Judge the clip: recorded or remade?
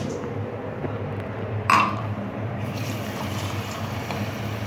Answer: remade